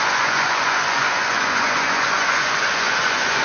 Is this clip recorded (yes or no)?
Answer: no